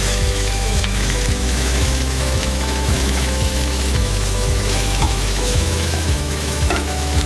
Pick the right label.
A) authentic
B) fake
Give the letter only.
B